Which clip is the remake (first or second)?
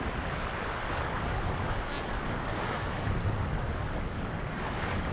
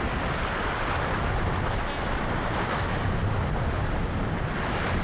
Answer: first